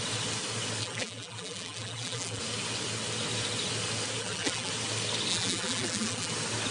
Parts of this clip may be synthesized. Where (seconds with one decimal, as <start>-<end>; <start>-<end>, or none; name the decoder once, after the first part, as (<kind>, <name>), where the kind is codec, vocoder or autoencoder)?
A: 0.8-2.4 (vocoder, BigVGAN v2); 4.2-4.7; 5.3-6.3